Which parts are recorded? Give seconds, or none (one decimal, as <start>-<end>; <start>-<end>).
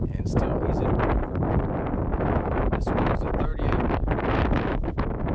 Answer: 0.5-2.2; 3.5-4.5